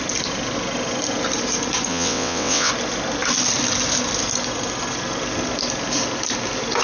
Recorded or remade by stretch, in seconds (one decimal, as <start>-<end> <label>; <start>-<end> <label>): 0.0-1.9 recorded; 1.9-2.7 remade; 2.7-6.8 recorded